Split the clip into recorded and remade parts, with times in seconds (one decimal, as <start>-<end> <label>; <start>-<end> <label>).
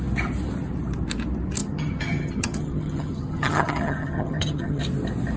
0.0-1.6 recorded; 1.6-4.8 remade; 4.8-5.4 recorded